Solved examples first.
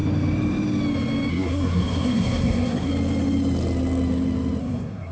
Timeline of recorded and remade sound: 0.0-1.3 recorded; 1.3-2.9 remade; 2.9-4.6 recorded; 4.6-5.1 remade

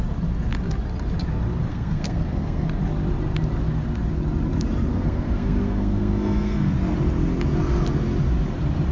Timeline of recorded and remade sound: 0.0-1.7 recorded; 1.7-2.8 remade; 2.8-4.9 recorded; 4.9-6.7 remade; 6.7-8.9 recorded

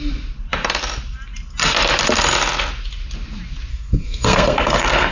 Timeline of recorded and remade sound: 0.0-3.7 recorded; 3.7-5.1 remade

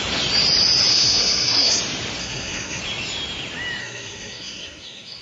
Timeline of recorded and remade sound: 0.0-0.9 recorded; 0.9-1.8 remade; 1.8-2.2 recorded; 2.2-2.8 remade; 2.8-3.8 recorded; 3.8-5.2 remade

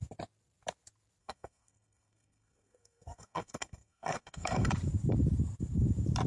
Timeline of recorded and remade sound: 0.0-1.2 recorded; 1.2-4.7 remade; 4.7-6.3 recorded

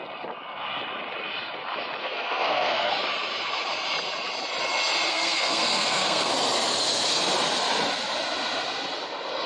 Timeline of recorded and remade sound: 0.0-2.0 recorded; 2.0-2.9 remade; 2.9-5.1 recorded; 5.1-6.3 remade; 6.3-9.5 recorded